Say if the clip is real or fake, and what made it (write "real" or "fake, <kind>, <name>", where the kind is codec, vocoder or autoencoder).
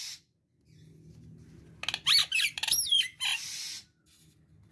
real